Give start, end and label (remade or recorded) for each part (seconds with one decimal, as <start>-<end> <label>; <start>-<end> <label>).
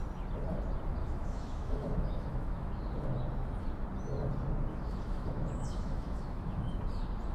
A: 0.0-1.0 recorded; 1.0-2.7 remade; 2.7-4.7 recorded; 4.7-6.7 remade; 6.7-7.3 recorded